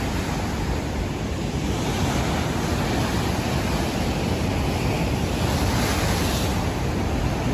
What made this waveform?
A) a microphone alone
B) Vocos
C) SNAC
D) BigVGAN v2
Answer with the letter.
A